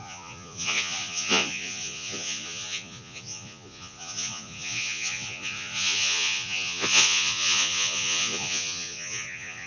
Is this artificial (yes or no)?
yes